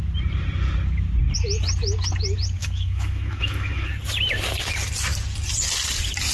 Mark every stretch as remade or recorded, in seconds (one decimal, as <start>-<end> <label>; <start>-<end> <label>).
0.0-2.6 recorded; 2.6-3.9 remade; 3.9-6.3 recorded